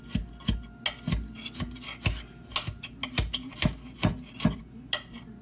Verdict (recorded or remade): recorded